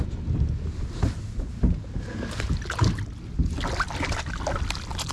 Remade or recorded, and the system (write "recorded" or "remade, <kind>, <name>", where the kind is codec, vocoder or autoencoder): recorded